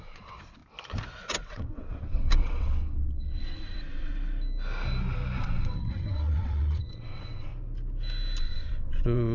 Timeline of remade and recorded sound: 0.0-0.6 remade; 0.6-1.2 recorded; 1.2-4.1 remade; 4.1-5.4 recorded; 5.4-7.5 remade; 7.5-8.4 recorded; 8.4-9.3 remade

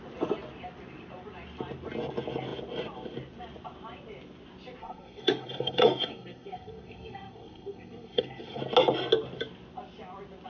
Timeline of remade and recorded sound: 0.0-4.8 recorded; 4.8-8.6 remade; 8.6-10.5 recorded

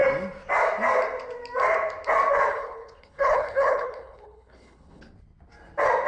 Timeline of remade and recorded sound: 0.0-2.5 recorded; 2.5-5.0 remade; 5.0-6.1 recorded